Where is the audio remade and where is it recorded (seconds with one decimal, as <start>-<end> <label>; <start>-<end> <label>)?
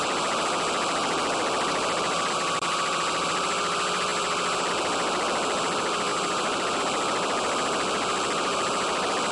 0.0-6.1 recorded; 6.1-6.8 remade; 6.8-9.3 recorded